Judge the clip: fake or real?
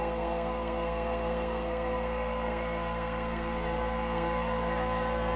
fake